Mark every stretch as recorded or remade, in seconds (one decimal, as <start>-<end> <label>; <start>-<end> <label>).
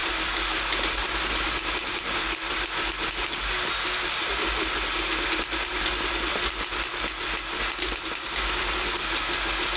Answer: 0.0-9.8 recorded